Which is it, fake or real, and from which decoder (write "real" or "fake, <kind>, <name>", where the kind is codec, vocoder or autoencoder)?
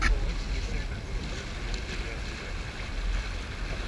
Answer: real